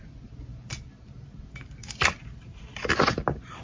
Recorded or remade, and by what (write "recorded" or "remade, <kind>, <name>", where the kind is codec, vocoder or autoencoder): recorded